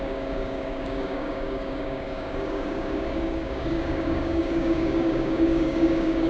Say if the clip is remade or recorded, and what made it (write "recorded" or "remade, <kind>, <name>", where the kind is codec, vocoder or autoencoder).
remade, codec, DAC